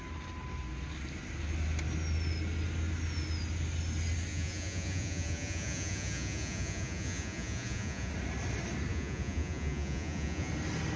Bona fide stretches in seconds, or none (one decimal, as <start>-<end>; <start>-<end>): 0.0-4.3; 8.1-8.9; 10.5-11.0